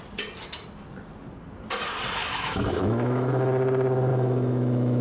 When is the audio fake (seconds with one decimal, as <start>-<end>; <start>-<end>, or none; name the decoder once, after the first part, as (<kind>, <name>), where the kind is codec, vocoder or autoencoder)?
2.2-3.3 (autoencoder, DAC-VAE); 4.1-5.0